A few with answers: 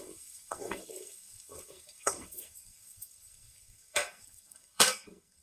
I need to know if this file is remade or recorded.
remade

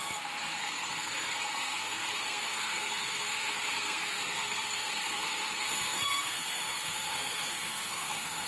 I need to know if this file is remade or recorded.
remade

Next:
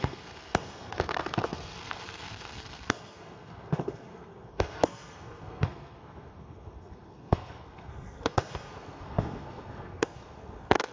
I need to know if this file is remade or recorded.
remade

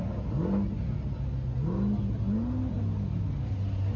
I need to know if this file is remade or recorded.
recorded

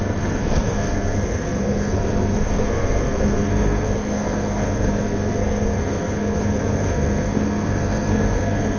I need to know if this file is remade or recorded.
remade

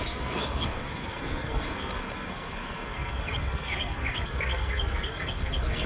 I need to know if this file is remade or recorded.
remade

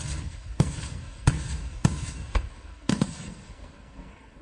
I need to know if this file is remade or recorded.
remade